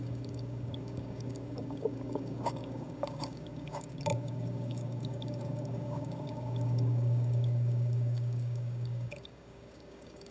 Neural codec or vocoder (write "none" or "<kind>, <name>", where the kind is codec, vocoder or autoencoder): codec, DAC